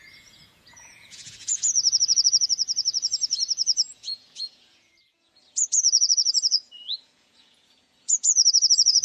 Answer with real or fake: fake